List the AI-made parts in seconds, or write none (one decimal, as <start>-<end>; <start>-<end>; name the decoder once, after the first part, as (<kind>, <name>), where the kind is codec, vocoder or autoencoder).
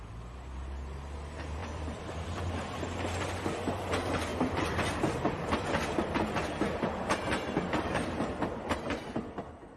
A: 1.6-3.8 (vocoder, BigVGAN v2); 4.3-8.8